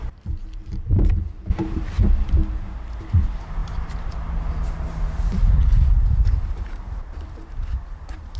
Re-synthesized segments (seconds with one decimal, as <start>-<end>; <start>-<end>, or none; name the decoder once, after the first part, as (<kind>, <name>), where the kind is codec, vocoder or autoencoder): 0.0-2.4 (vocoder, BigVGAN v2); 3.0-8.4